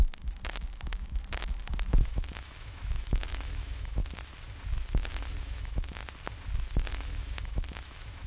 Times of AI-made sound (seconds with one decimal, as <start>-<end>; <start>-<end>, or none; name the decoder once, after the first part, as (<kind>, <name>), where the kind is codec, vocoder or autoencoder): 0.0-4.0 (autoencoder, DAC-VAE); 5.4-6.0; 6.9-8.3